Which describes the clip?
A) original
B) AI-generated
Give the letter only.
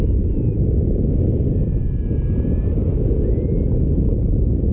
A